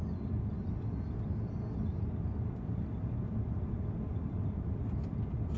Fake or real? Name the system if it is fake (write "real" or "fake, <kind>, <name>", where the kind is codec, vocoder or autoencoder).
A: real